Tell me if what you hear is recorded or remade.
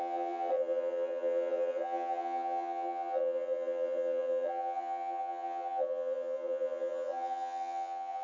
remade